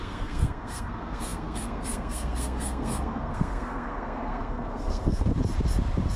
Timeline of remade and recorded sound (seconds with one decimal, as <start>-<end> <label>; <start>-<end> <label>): 0.0-5.3 remade; 5.3-6.2 recorded